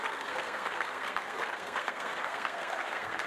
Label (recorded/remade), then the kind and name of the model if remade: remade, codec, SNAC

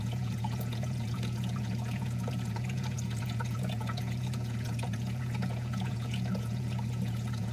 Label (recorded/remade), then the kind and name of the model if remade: remade, vocoder, Vocos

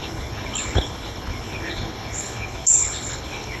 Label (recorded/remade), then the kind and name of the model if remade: remade, codec, HILCodec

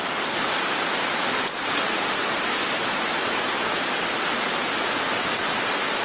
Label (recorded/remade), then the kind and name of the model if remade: recorded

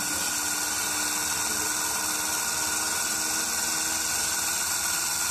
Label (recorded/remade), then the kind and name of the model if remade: recorded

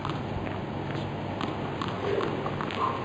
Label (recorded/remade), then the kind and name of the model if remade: recorded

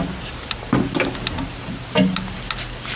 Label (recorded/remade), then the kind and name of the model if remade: recorded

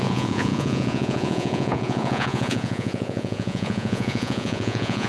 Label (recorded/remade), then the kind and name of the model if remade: remade, vocoder, Vocos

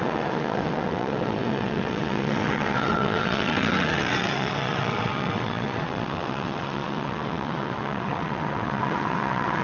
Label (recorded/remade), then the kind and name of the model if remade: remade, vocoder, WaveNeXt